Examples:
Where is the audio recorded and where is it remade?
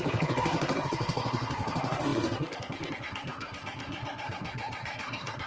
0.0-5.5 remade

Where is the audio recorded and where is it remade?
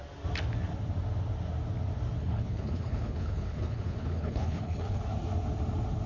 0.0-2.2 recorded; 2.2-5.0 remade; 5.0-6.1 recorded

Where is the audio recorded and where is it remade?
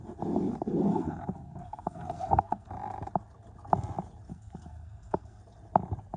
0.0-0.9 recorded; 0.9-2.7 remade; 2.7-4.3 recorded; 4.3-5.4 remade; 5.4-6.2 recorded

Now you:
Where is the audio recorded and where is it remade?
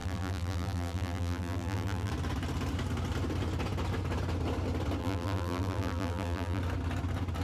0.0-2.1 remade; 2.1-5.0 recorded; 5.0-6.6 remade; 6.6-7.4 recorded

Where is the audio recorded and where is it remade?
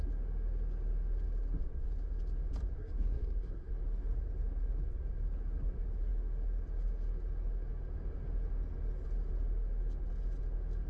0.0-2.7 recorded; 2.7-3.7 remade; 3.7-10.9 recorded